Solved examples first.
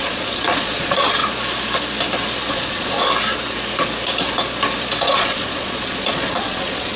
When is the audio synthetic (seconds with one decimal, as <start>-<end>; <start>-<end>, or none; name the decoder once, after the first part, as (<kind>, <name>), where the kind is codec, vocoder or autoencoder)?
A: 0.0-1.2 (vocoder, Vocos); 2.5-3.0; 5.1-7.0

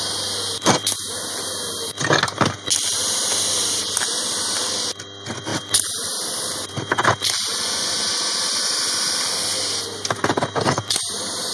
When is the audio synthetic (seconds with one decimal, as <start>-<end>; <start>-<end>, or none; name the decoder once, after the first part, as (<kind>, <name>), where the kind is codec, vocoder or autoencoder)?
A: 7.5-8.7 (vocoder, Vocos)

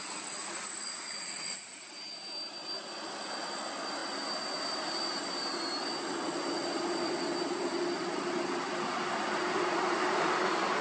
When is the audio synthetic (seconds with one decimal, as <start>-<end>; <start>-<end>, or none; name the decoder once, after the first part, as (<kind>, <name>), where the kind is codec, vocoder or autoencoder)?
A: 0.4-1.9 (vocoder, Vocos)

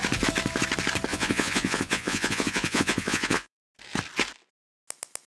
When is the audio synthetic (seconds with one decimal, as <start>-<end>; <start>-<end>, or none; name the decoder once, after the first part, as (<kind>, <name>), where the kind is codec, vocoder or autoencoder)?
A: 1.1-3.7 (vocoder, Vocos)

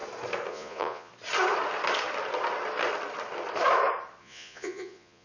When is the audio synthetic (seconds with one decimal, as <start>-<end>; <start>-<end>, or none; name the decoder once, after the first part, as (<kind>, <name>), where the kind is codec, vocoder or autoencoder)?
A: 0.5-1.1 (vocoder, Vocos); 4.2-5.2

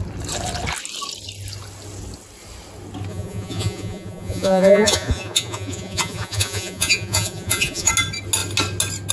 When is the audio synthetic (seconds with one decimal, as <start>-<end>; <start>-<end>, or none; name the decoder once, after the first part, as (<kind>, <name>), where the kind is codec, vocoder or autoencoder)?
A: 3.1-7.9 (vocoder, Vocos)

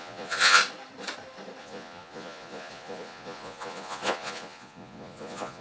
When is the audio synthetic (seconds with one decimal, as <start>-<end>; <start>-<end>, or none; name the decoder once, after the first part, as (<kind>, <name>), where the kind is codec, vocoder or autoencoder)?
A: 0.0-0.6 (vocoder, Vocos); 1.6-5.6